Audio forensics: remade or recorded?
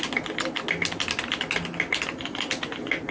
recorded